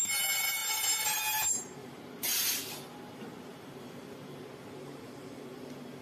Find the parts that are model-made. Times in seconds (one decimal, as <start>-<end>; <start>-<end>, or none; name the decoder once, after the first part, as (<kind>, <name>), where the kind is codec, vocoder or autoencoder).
0.6-1.2 (vocoder, BigVGAN v2); 1.8-2.6; 3.5-4.4